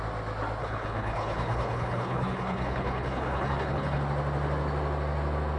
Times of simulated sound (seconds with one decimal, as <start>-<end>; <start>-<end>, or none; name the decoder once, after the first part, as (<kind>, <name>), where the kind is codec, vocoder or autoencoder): 0.6-4.0 (codec, HILCodec)